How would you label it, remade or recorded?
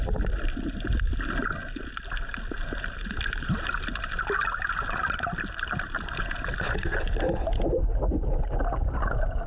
recorded